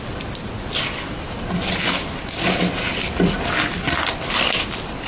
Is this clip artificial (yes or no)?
no